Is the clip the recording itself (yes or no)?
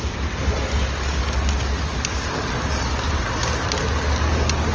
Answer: yes